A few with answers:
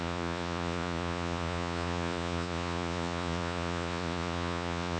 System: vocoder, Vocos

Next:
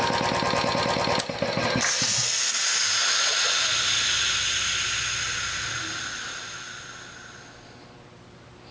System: none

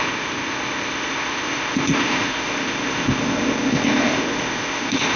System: codec, ZipCodec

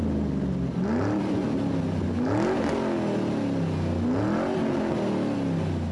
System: none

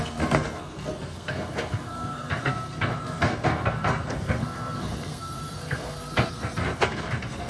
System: codec, SNAC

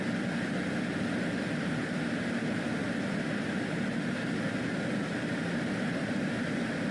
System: none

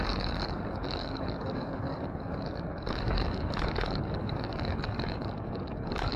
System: codec, DAC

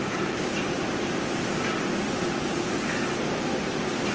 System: none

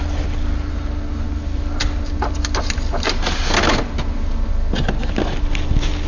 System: none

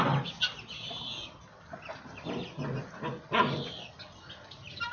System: none